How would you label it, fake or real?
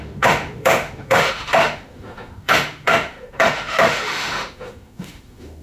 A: fake